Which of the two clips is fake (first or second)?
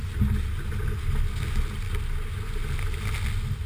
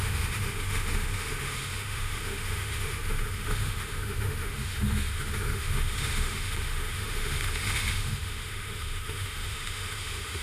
second